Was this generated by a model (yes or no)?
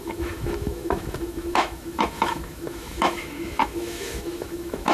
yes